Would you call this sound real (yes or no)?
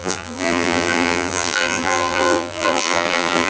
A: no